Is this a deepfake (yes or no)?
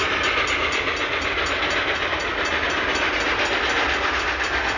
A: no